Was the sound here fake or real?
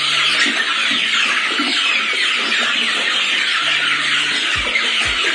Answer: real